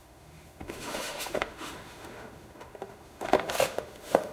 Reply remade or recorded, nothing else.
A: remade